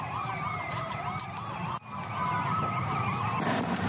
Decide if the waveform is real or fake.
real